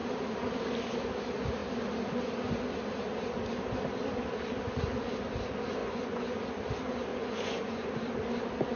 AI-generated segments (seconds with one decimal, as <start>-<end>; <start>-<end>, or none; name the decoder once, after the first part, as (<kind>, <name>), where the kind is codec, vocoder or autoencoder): 5.8-6.4 (vocoder, Vocos); 7.1-7.9

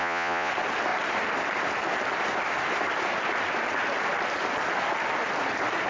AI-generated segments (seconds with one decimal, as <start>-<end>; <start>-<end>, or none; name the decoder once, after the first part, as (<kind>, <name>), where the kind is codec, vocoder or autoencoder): 0.0-0.5 (vocoder, Vocos)